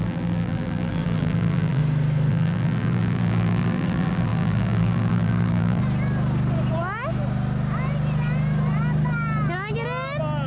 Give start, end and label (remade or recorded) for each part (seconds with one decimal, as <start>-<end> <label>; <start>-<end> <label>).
0.0-1.8 remade; 1.8-2.3 recorded; 2.3-5.8 remade; 5.8-10.5 recorded